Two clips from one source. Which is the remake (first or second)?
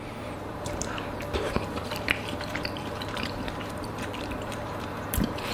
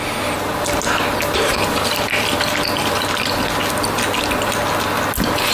first